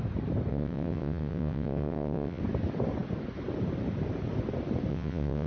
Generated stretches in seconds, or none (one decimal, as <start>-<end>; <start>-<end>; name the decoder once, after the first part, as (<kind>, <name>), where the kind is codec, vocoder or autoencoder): 0.5-2.4 (vocoder, WaveNeXt); 4.9-5.5